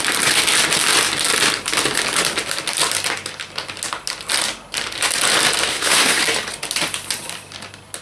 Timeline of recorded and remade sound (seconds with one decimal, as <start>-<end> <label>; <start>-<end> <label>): 0.0-5.7 recorded; 5.7-6.2 remade; 6.2-8.0 recorded